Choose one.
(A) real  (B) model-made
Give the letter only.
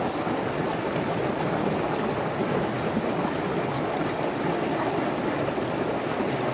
A